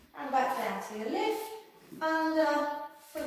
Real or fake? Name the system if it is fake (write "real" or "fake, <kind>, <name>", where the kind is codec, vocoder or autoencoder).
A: fake, codec, DAC